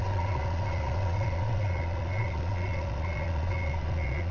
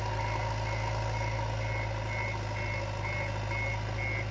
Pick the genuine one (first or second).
second